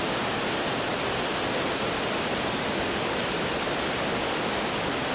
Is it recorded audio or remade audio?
recorded